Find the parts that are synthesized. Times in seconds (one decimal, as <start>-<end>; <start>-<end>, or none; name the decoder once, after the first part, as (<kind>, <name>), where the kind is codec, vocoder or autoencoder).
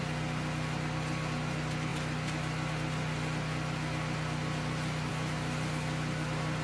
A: none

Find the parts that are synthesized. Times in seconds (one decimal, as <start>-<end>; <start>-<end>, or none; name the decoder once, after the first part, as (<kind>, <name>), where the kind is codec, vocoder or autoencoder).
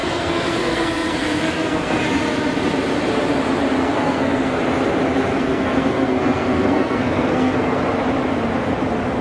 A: 0.0-2.0 (codec, SNAC); 3.8-4.6; 5.3-7.8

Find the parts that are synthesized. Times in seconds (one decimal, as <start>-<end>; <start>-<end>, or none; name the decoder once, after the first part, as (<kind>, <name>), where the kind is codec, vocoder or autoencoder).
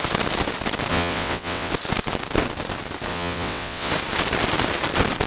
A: 0.9-1.7 (vocoder, WaveNeXt); 3.1-3.9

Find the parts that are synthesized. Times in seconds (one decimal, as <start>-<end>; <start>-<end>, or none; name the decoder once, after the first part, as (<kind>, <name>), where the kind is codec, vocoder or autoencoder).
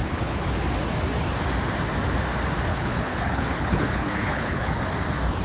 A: 0.0-0.5 (codec, HILCodec); 2.7-4.8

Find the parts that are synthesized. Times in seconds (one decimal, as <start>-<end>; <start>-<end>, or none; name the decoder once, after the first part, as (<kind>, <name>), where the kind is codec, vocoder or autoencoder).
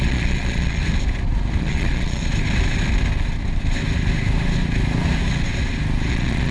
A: 0.0-0.8 (vocoder, Vocos); 1.6-2.2; 6.1-6.5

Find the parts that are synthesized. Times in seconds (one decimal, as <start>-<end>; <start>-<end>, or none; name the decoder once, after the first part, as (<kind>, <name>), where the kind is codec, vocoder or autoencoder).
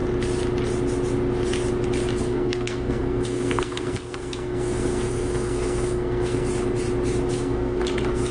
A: 2.2-6.5 (codec, SNAC); 7.3-8.3